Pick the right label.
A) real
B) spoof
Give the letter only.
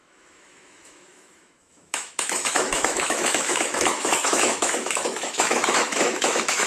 B